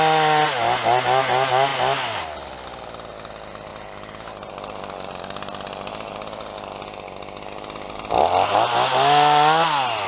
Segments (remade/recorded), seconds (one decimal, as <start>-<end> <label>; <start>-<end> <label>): 0.0-10.1 recorded